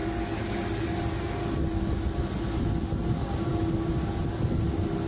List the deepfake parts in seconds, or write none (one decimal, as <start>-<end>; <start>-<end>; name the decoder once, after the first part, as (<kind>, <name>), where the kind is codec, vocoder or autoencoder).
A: none